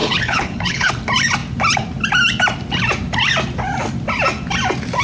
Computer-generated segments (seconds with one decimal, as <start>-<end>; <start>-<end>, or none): 0.0-0.9